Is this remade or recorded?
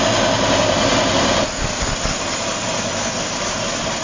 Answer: recorded